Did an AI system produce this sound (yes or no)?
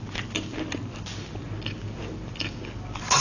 no